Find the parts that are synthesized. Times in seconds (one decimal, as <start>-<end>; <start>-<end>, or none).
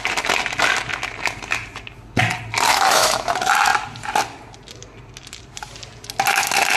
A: 2.7-3.3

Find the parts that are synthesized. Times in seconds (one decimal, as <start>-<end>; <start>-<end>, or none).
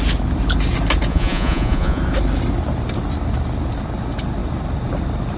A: 1.1-2.0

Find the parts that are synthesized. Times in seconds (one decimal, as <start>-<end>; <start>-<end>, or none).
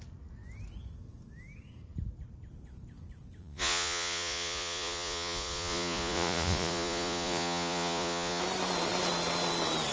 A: 3.4-8.4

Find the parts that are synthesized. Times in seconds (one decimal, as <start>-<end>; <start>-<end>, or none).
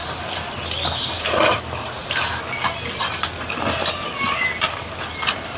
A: 1.3-2.0; 4.6-5.6